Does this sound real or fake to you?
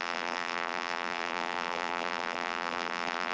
fake